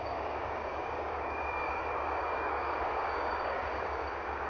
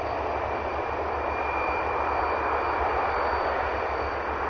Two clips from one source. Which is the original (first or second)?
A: second